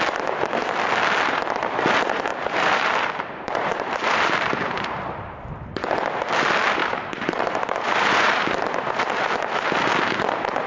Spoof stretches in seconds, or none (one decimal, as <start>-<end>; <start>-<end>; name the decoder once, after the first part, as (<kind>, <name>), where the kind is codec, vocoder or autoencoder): 2.3-5.4 (vocoder, BigVGAN v2); 6.8-8.5